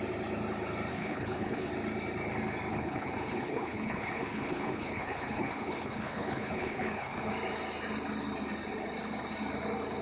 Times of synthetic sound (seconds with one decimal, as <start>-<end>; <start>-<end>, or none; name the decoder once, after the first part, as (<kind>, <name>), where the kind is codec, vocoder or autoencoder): 0.9-1.7 (codec, HILCodec); 2.7-7.3